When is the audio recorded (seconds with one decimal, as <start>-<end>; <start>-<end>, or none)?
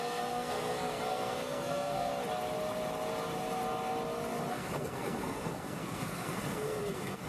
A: 2.1-4.5